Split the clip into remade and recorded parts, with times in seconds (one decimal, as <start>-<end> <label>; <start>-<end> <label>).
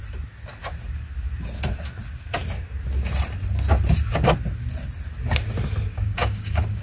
0.0-5.9 recorded; 5.9-6.8 remade